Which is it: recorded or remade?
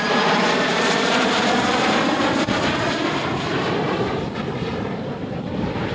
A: remade